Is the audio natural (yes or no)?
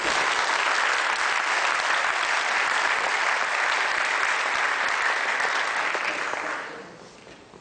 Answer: yes